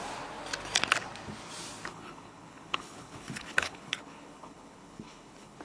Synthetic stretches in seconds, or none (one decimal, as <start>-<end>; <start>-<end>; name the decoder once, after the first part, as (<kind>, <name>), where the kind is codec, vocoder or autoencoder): 1.9-5.6 (codec, HILCodec)